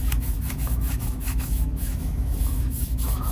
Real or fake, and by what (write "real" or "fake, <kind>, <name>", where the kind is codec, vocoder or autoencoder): fake, autoencoder, DAC-VAE